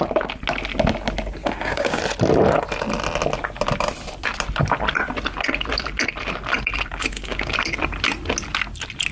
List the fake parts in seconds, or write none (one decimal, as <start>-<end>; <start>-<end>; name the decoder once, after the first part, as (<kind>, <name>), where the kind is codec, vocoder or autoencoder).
1.4-2.0 (codec, DAC); 6.9-7.5